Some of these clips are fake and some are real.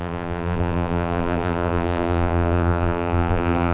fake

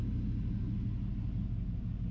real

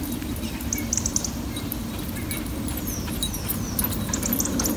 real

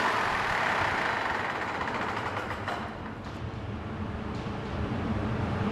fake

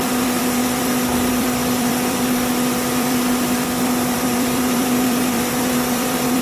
fake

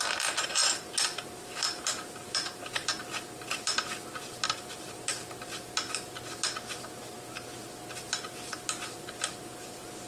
real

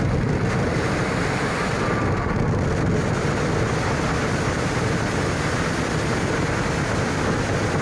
real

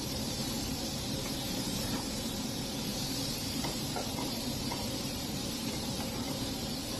fake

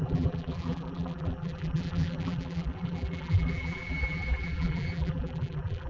fake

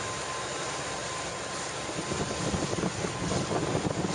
real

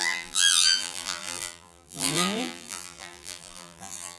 fake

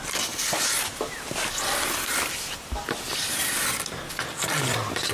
fake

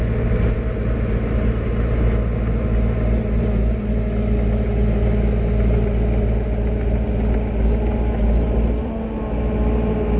real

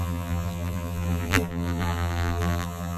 fake